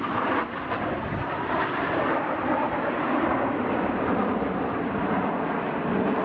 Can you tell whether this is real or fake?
fake